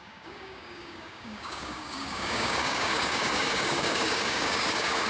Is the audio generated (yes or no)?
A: yes